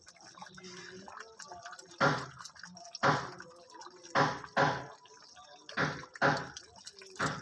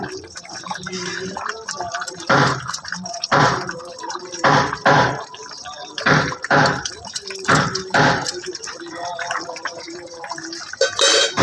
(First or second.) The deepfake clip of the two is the second